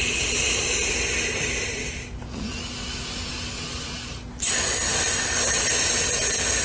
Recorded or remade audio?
recorded